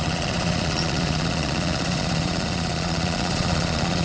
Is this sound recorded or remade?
remade